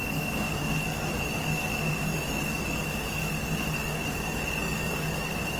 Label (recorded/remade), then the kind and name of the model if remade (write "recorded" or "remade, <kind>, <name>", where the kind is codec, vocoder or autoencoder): remade, codec, DAC